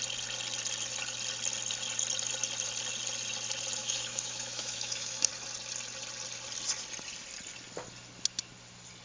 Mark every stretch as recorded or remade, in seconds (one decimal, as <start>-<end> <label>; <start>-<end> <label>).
0.0-3.8 recorded; 3.8-5.3 remade; 5.3-9.0 recorded